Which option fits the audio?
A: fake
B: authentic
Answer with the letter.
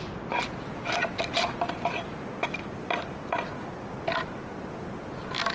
B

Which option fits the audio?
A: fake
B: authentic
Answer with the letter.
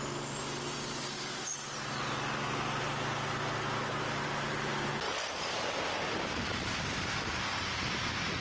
B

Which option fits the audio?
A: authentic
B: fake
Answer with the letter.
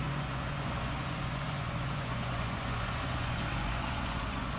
B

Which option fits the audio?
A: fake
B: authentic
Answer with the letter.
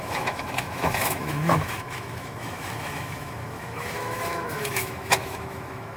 A